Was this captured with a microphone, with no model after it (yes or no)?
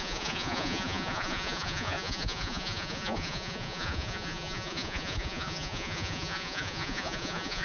no